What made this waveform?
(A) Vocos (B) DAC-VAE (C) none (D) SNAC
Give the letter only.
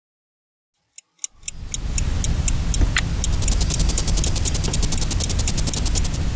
C